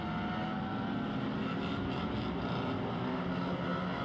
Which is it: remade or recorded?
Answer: recorded